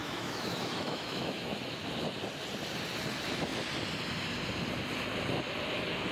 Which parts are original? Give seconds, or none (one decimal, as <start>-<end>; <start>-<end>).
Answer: 1.6-6.1